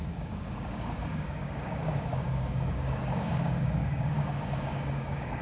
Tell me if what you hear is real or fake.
fake